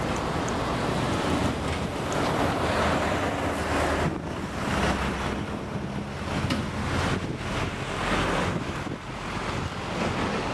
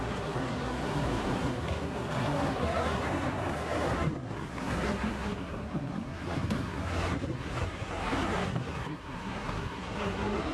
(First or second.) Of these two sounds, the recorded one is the first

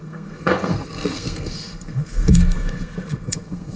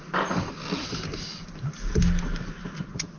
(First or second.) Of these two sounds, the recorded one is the second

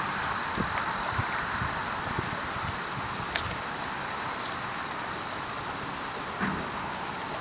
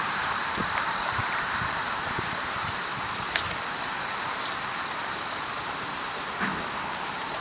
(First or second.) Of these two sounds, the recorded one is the first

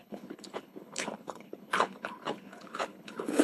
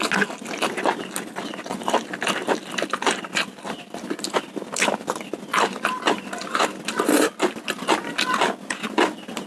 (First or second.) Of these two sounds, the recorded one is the second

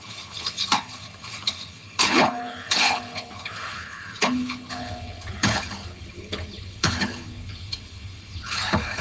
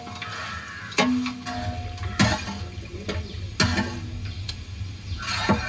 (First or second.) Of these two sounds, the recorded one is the second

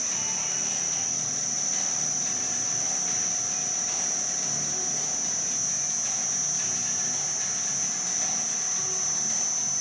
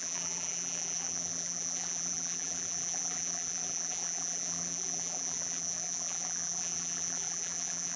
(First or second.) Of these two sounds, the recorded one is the first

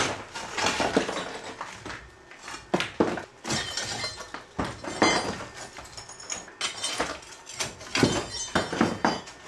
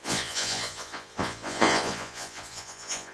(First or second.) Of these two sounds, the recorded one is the first